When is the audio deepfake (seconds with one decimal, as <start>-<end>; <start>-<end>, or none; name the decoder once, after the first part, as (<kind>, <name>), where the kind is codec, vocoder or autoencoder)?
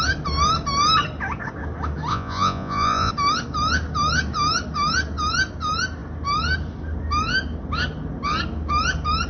2.1-3.1 (vocoder, Vocos)